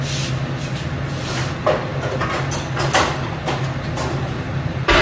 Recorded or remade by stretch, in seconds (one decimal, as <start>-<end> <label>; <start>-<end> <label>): 0.0-5.0 recorded